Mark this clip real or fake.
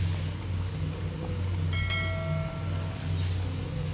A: real